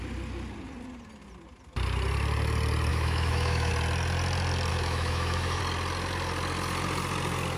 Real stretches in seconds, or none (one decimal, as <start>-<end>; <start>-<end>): 0.0-2.9; 3.7-4.7; 5.6-7.6